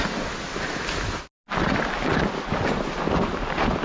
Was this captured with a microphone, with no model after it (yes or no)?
yes